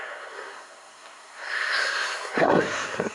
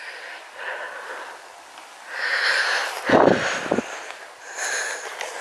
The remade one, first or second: first